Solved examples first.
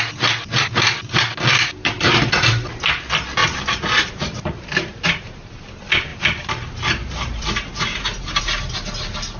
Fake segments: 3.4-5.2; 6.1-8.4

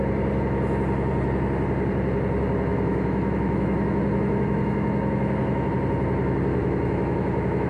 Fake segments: 2.7-5.7; 6.6-7.7